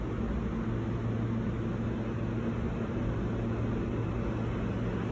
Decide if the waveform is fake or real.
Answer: real